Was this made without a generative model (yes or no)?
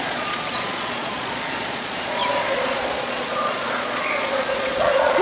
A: no